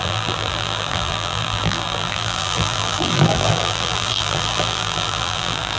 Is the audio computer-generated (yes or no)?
yes